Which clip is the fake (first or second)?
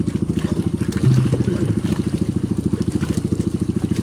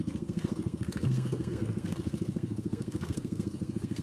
second